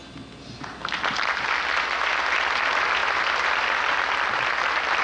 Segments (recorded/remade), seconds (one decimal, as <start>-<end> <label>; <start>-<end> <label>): 0.0-0.8 recorded; 0.8-1.7 remade; 1.7-3.0 recorded; 3.0-4.4 remade; 4.4-5.0 recorded